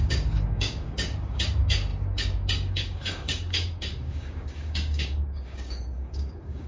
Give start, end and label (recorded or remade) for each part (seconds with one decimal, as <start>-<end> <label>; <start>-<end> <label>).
0.0-6.7 remade